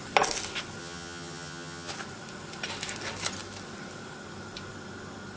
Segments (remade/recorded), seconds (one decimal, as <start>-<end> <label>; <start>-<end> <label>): 0.0-0.8 recorded; 0.8-1.9 remade; 1.9-5.4 recorded